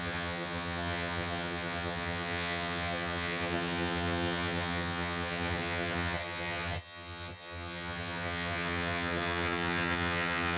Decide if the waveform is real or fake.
fake